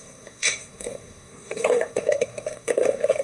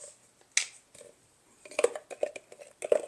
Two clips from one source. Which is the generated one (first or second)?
first